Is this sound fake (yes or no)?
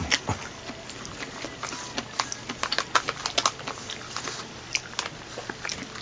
no